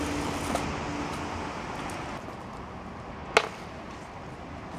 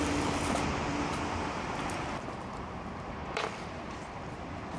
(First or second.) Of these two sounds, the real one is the first